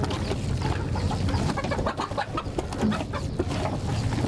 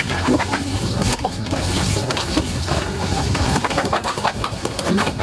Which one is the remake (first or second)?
second